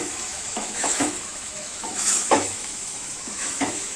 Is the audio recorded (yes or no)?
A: no